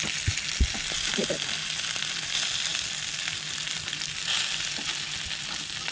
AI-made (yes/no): no